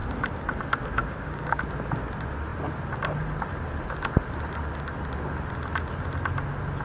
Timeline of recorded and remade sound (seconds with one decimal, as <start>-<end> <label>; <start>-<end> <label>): 0.0-1.0 recorded; 1.0-1.6 remade; 1.6-6.8 recorded